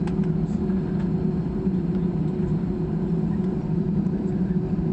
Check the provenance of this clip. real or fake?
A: fake